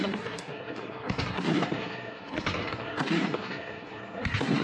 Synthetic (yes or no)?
yes